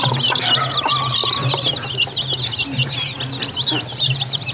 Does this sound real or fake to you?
real